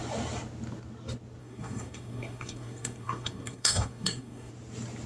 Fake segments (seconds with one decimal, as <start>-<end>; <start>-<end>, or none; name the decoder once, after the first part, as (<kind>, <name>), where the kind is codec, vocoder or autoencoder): 1.4-4.5 (codec, SNAC)